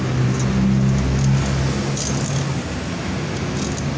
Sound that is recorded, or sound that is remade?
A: recorded